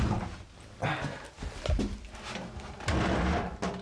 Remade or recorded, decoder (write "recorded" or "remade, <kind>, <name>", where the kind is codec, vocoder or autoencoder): recorded